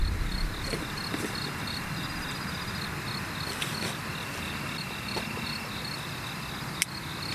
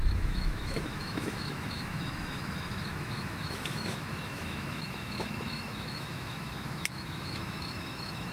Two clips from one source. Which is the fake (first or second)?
second